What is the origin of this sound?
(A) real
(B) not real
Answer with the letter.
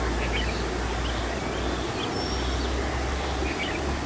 A